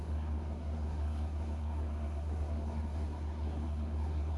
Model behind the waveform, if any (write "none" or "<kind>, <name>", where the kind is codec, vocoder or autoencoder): codec, SNAC